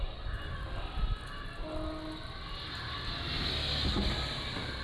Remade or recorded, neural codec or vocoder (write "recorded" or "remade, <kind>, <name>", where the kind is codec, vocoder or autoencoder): recorded